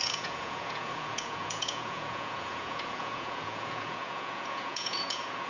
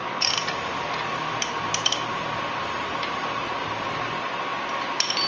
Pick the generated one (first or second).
first